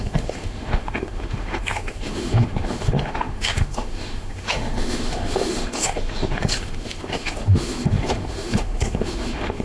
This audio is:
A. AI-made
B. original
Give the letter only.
A